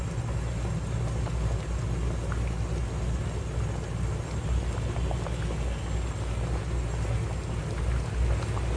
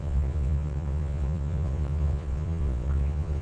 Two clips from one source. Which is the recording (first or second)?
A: first